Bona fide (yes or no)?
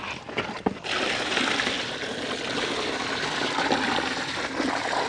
yes